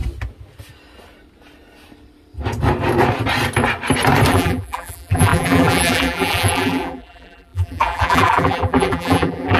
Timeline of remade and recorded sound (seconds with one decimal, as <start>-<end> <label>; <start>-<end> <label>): 0.0-4.3 recorded; 4.3-9.6 remade